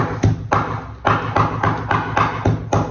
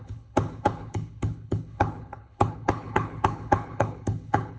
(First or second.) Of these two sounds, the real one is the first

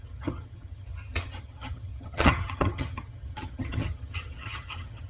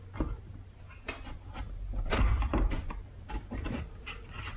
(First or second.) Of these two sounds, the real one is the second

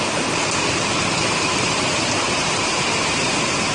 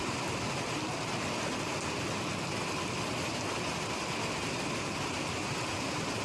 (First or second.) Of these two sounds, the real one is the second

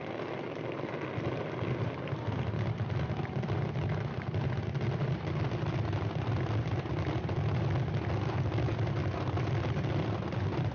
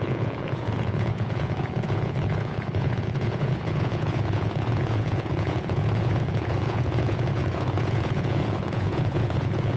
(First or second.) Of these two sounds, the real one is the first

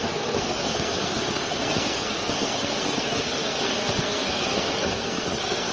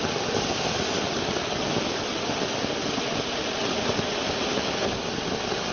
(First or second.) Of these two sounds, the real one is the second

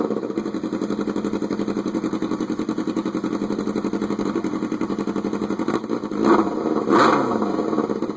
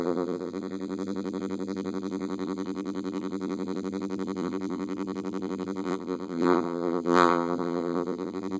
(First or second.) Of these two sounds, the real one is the first